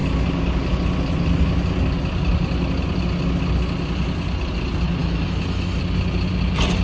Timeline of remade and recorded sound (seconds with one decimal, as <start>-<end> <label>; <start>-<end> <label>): 0.0-5.0 recorded; 5.0-5.8 remade; 5.8-6.8 recorded